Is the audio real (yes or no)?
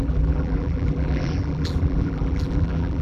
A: no